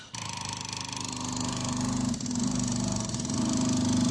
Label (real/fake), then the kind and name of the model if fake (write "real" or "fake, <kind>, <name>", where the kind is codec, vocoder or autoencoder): real